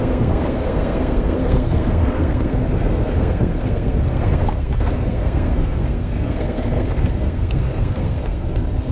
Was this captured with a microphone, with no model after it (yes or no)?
no